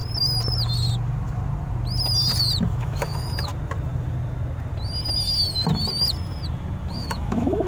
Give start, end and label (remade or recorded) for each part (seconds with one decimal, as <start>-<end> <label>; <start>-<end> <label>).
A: 0.0-2.8 recorded; 2.8-3.5 remade; 3.5-6.9 recorded; 6.9-7.7 remade